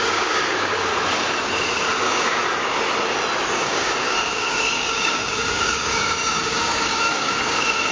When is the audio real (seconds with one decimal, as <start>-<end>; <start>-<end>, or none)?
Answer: 0.9-2.0; 2.4-3.5